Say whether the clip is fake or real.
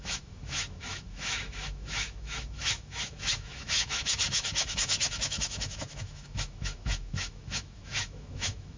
fake